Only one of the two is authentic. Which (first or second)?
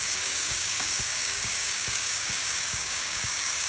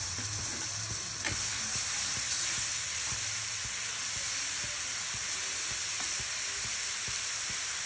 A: second